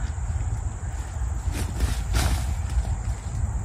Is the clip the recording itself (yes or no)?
yes